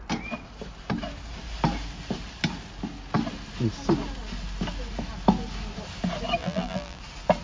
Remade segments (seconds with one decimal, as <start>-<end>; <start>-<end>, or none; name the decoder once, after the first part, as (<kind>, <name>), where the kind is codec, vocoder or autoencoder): 6.4-7.0 (vocoder, BigVGAN v2)